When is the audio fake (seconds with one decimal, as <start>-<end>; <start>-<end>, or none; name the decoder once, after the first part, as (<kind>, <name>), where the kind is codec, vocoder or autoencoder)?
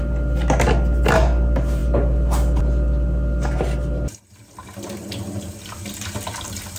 none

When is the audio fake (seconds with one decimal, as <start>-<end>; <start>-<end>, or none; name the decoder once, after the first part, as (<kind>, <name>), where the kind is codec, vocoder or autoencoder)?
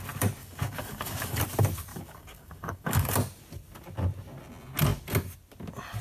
0.4-1.4 (codec, DAC); 1.9-3.1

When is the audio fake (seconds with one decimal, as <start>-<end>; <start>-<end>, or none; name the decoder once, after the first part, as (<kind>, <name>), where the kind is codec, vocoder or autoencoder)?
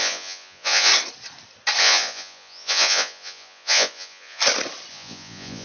0.0-0.9 (vocoder, Vocos); 1.8-4.4; 4.9-5.6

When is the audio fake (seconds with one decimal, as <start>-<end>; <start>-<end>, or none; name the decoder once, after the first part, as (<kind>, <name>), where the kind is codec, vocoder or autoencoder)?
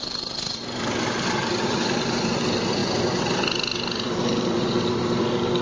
0.0-5.6 (vocoder, BigVGAN v2)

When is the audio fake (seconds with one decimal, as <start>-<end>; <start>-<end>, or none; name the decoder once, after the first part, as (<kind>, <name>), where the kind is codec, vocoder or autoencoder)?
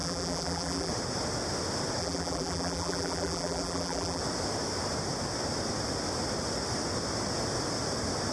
0.0-0.9 (vocoder, BigVGAN v2); 2.0-4.2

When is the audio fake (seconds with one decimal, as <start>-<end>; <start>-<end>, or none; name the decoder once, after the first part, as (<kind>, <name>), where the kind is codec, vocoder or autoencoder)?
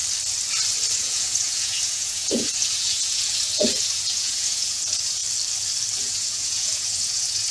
0.9-5.2 (vocoder, Vocos); 6.0-7.5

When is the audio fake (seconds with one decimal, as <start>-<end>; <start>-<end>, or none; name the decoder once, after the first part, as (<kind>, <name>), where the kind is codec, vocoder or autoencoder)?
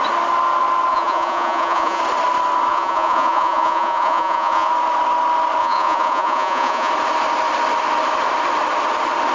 0.9-2.0 (vocoder, Vocos); 2.7-4.7; 5.6-6.9